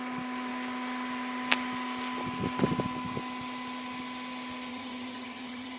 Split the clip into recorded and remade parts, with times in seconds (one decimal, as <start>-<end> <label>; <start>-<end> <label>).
0.0-4.7 recorded; 4.7-5.8 remade